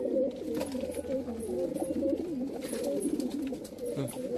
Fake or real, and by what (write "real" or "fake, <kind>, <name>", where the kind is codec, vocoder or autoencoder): real